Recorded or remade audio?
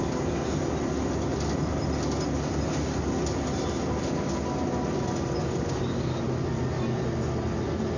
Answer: recorded